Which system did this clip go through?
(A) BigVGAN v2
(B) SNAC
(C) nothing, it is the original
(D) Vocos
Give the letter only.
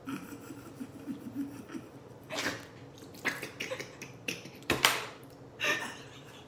A